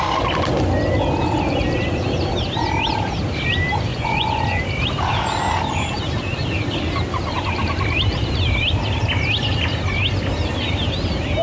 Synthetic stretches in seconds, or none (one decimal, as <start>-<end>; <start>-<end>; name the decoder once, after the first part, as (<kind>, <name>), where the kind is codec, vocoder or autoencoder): 3.9-4.6 (vocoder, Vocos)